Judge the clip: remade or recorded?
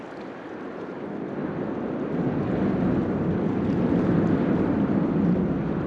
recorded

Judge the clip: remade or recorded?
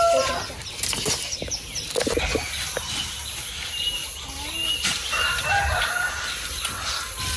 recorded